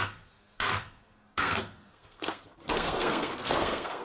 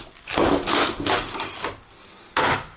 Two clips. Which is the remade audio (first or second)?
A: first